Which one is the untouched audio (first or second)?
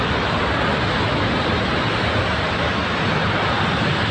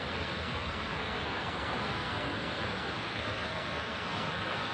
first